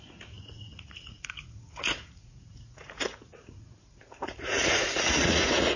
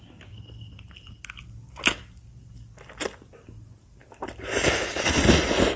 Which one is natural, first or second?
second